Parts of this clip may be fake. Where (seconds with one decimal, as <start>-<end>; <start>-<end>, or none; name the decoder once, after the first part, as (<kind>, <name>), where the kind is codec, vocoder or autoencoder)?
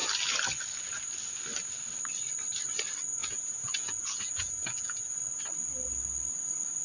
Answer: 3.2-5.2 (vocoder, Vocos)